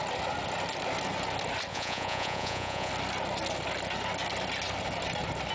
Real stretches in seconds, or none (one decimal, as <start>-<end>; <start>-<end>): 0.0-1.7; 2.9-5.5

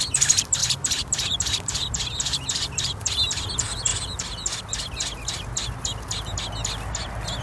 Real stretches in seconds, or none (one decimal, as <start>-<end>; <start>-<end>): 3.9-7.4